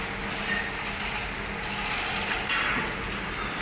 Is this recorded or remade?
recorded